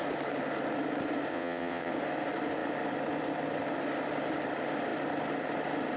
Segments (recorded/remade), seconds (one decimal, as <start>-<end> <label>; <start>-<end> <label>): 0.0-1.3 recorded; 1.3-1.9 remade; 1.9-6.0 recorded